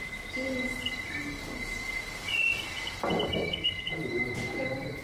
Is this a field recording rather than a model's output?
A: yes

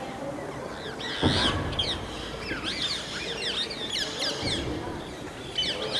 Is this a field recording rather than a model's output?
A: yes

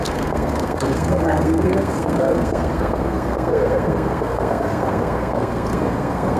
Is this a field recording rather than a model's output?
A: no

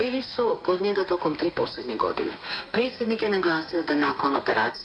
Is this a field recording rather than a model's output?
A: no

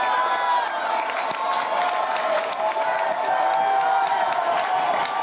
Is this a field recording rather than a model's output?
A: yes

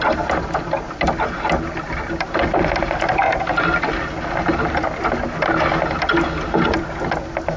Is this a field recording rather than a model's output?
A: yes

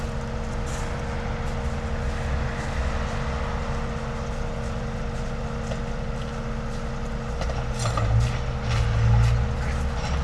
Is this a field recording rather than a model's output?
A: yes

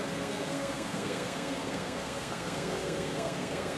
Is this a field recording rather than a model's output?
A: no